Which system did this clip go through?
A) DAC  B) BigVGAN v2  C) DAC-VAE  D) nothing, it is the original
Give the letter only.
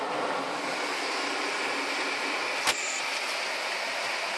D